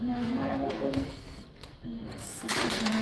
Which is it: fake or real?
fake